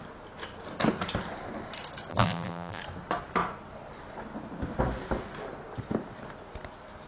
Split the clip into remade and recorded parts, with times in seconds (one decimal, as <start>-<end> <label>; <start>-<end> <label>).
0.0-2.1 recorded; 2.1-2.8 remade; 2.8-7.1 recorded